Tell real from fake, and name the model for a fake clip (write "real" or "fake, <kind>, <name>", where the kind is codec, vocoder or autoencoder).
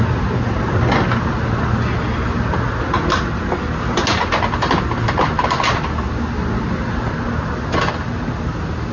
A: real